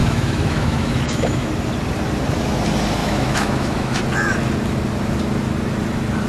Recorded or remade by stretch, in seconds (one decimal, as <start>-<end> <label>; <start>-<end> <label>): 0.0-1.5 remade; 1.5-3.0 recorded; 3.0-4.0 remade; 4.0-6.3 recorded